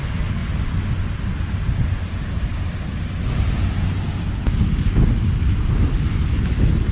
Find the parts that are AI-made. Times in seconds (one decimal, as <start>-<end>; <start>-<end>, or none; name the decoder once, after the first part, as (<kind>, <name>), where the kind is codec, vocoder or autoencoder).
none